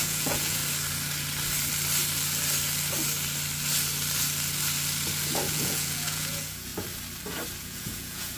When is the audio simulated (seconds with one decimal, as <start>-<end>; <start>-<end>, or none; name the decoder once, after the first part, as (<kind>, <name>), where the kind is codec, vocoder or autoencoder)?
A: 0.0-0.6 (vocoder, Vocos); 5.5-6.7; 7.6-8.4